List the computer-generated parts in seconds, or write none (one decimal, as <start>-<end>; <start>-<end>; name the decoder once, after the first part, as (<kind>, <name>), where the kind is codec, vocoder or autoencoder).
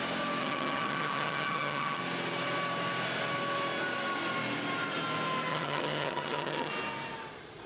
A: 0.4-2.0 (vocoder, HiFi-GAN); 5.5-6.7